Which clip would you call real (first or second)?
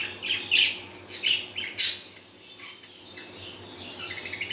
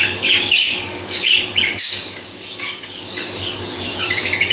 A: first